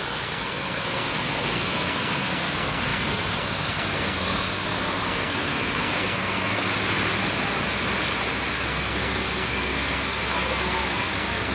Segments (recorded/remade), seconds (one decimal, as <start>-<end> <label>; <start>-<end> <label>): 0.0-6.6 remade; 6.6-8.5 recorded; 8.5-11.5 remade